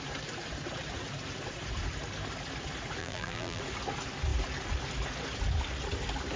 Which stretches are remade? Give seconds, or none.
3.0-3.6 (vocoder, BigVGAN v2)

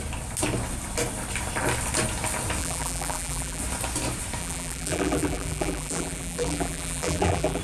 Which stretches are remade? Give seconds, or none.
2.6-3.6 (vocoder, BigVGAN v2); 4.4-7.6